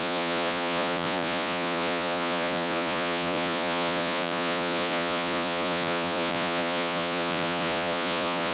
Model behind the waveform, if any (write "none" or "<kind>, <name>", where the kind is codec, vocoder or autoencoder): vocoder, Vocos